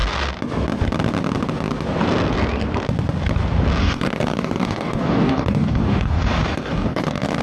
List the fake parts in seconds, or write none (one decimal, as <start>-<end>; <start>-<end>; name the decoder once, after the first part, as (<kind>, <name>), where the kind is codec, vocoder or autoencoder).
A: 3.8-7.4 (codec, DAC)